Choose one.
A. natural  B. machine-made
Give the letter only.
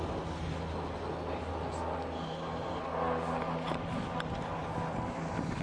A